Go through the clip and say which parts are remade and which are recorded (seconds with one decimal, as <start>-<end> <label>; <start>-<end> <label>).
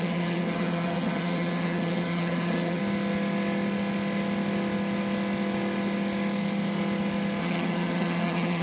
0.0-2.8 remade; 2.8-7.4 recorded; 7.4-8.6 remade